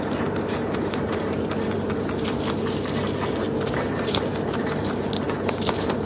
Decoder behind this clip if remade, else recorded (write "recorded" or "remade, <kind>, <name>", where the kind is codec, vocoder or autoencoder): recorded